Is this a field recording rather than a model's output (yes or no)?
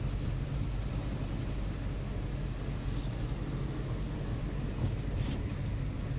yes